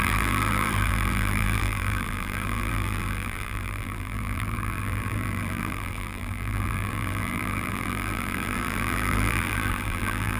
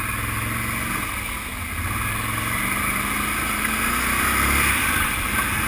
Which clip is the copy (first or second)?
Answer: first